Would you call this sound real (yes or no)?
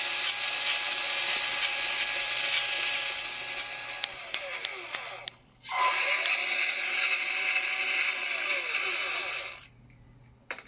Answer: yes